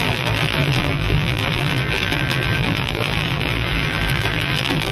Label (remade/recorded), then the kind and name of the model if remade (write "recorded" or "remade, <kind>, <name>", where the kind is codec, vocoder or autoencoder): remade, vocoder, BigVGAN v2